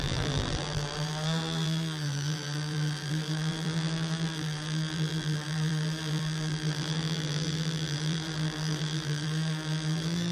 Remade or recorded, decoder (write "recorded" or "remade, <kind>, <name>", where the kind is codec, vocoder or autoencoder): remade, vocoder, BigVGAN v2